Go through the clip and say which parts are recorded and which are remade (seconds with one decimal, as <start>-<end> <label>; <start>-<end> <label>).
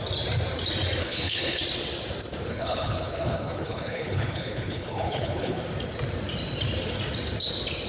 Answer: 0.0-1.0 recorded; 1.0-1.6 remade; 1.6-2.5 recorded; 2.5-5.6 remade; 5.6-7.9 recorded